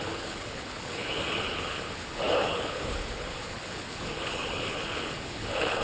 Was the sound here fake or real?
fake